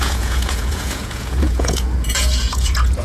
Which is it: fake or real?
fake